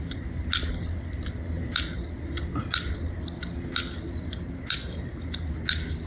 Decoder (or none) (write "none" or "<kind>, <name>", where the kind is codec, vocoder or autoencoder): none